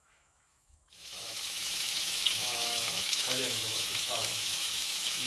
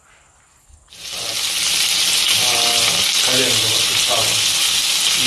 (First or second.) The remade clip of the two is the first